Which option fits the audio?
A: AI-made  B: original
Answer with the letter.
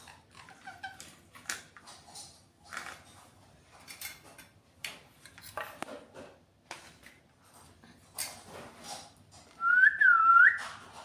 B